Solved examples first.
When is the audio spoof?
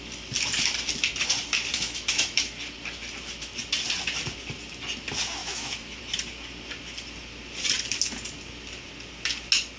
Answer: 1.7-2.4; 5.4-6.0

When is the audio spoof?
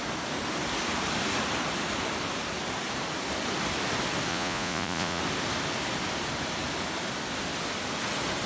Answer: 4.3-5.2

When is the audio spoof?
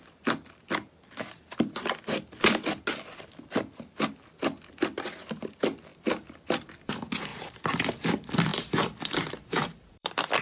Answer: 5.9-6.7; 8.5-10.4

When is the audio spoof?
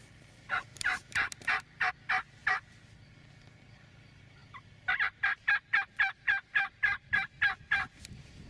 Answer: 0.7-1.9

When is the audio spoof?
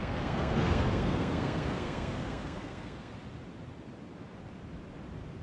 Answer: 0.0-3.1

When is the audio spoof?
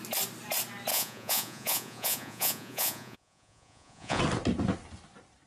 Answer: 0.9-4.2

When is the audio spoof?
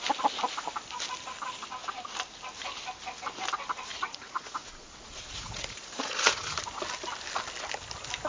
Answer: 3.9-6.6